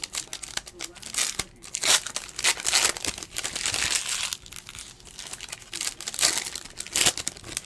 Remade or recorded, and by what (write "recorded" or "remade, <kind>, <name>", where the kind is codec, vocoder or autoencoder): recorded